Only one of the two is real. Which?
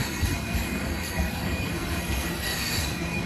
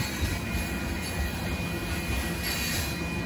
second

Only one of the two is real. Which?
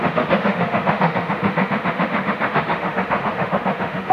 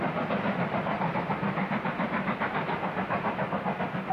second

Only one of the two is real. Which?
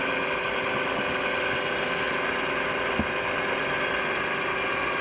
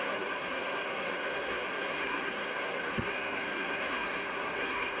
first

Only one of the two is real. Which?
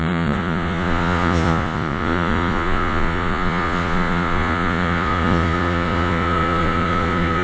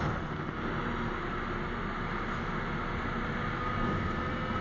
second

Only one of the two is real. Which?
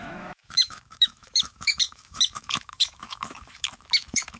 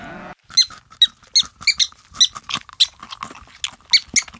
second